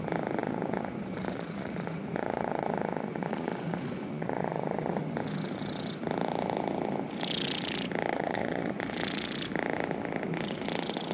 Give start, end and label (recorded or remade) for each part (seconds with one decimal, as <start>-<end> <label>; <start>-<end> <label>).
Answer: 0.0-0.4 recorded; 0.4-5.0 remade; 5.0-8.1 recorded; 8.1-8.8 remade; 8.8-11.1 recorded